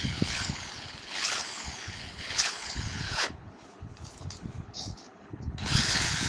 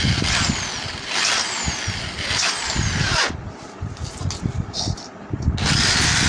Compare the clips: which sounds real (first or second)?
second